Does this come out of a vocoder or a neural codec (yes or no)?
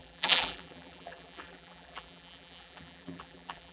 yes